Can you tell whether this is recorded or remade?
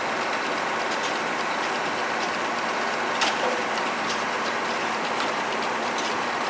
remade